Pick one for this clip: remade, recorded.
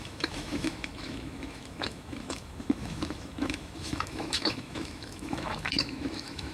remade